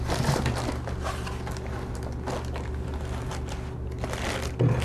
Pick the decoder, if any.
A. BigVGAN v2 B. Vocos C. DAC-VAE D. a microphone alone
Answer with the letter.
D